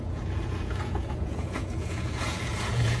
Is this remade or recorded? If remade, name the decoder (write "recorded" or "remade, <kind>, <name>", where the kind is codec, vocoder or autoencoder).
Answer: remade, vocoder, Vocos